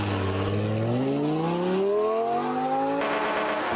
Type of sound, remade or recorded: recorded